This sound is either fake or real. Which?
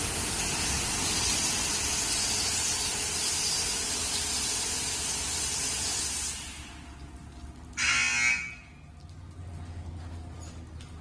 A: real